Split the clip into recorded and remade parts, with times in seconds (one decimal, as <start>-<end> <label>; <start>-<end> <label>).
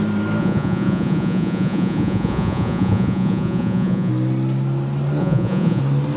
0.0-0.4 recorded; 0.4-4.1 remade; 4.1-5.2 recorded; 5.2-5.8 remade; 5.8-6.2 recorded